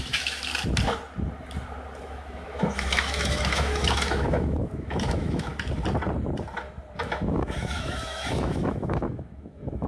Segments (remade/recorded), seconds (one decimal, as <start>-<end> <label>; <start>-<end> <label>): 0.0-0.5 remade; 0.5-2.0 recorded; 2.0-5.5 remade; 5.5-7.0 recorded; 7.0-9.9 remade